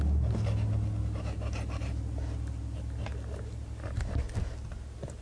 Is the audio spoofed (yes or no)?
no